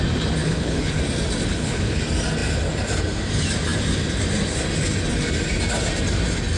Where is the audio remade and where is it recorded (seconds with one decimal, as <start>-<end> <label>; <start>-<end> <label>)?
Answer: 0.0-0.4 recorded; 0.4-1.0 remade; 1.0-1.5 recorded; 1.5-2.0 remade; 2.0-6.6 recorded